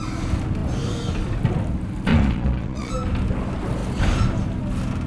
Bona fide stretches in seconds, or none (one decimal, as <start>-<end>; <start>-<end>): 0.0-2.1; 2.9-5.1

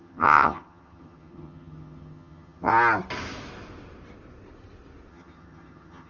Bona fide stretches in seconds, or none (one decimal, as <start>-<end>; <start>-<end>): 2.7-5.1

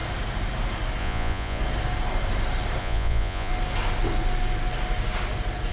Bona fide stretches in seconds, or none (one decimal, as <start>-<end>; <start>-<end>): 0.0-1.0; 1.6-2.8; 3.5-5.7

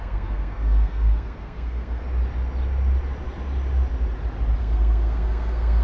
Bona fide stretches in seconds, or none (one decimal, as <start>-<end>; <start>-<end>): 2.0-4.6

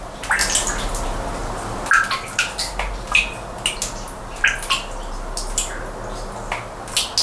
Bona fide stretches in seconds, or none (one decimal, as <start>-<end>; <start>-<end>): 0.0-7.2

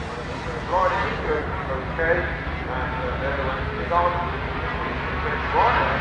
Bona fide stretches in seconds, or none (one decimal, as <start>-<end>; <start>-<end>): 0.0-6.0

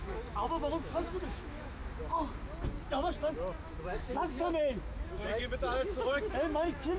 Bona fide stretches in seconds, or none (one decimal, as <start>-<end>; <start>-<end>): 1.8-3.7

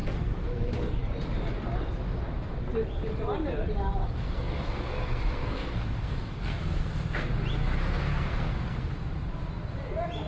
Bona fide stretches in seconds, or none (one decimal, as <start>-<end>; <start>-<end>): 1.0-4.0; 7.3-8.0; 8.9-10.3